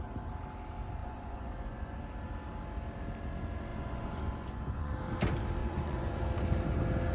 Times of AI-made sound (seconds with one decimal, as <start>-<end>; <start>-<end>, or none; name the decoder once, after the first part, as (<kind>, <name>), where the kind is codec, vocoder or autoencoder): 1.0-2.0 (vocoder, Vocos); 3.7-4.9; 5.6-6.2